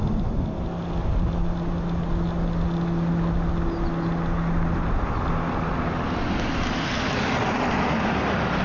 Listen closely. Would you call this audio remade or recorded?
recorded